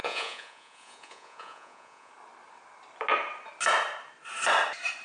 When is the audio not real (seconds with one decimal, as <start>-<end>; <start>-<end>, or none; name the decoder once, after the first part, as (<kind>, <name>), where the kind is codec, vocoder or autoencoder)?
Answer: 0.0-2.1 (vocoder, Vocos)